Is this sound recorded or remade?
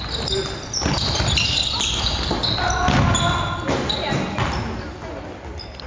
recorded